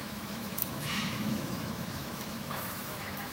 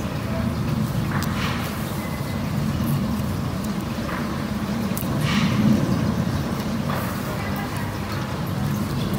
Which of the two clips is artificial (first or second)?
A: first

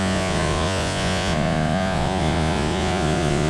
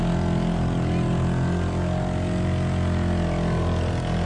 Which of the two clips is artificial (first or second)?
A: first